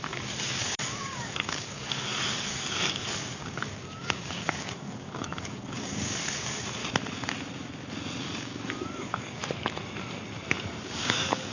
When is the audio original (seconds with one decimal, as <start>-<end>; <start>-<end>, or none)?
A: 6.8-8.2; 9.4-10.8